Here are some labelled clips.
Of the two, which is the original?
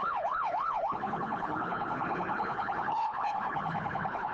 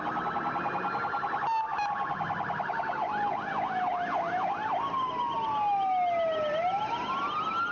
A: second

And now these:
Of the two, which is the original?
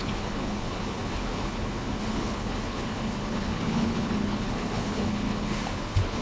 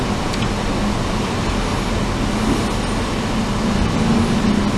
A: second